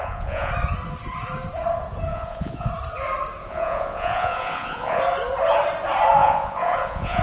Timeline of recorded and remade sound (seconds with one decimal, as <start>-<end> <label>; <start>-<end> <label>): 0.0-0.5 remade; 0.5-2.1 recorded; 2.1-2.7 remade; 2.7-3.4 recorded; 3.4-5.0 remade; 5.0-6.2 recorded; 6.2-7.2 remade